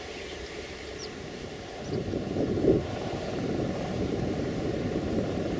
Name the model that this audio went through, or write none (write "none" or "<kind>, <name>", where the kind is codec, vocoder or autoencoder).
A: vocoder, BigVGAN v2